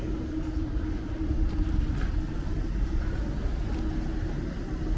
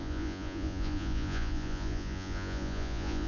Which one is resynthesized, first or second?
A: second